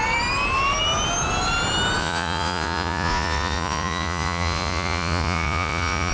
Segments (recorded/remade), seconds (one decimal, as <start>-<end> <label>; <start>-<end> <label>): 0.0-2.0 recorded; 2.0-6.1 remade